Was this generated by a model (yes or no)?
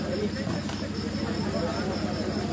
no